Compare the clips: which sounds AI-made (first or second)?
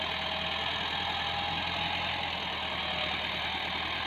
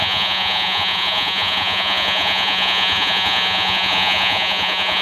second